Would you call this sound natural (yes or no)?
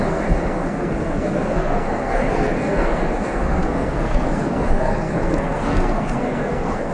no